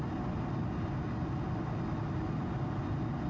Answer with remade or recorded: recorded